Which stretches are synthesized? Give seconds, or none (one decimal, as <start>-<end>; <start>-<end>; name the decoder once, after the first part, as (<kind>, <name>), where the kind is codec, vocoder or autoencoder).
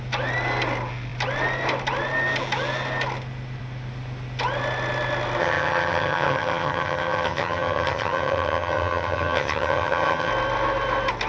5.4-10.3 (vocoder, HiFi-GAN)